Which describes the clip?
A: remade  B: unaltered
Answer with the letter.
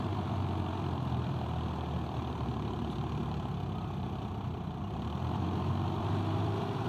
A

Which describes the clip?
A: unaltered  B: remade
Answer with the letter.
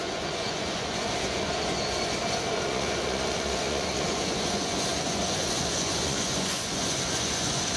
B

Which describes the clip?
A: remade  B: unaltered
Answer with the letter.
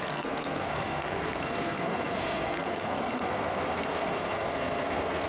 A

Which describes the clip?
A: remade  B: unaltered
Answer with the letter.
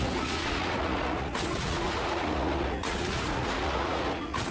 A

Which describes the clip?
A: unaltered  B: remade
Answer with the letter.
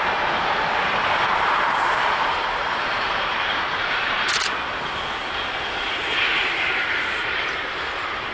B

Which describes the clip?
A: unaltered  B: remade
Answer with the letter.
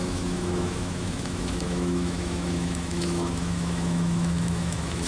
B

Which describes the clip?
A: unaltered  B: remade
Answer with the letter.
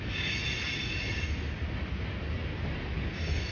A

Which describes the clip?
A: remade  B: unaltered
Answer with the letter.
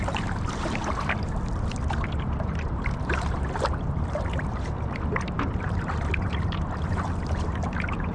A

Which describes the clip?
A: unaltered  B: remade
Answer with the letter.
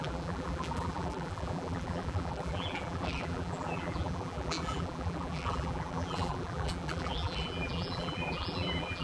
B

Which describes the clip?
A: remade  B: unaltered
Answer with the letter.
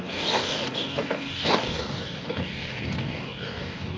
A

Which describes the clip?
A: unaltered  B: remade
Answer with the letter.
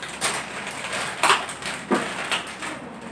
A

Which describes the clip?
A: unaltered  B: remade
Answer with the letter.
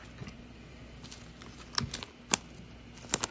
A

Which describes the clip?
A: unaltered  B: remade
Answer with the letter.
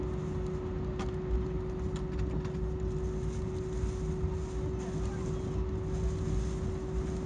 A